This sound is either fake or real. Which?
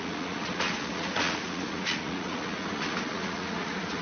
fake